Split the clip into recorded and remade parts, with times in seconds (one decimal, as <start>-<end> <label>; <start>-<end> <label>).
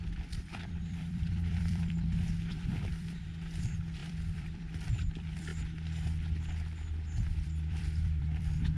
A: 0.0-5.5 remade; 5.5-7.3 recorded; 7.3-8.8 remade